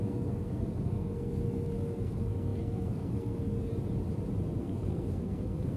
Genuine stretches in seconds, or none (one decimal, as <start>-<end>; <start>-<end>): 3.7-4.6